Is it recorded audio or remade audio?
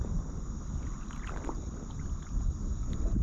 recorded